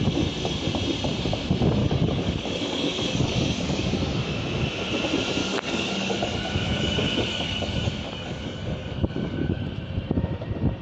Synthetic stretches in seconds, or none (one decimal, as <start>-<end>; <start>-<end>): 1.8-4.4; 5.4-9.6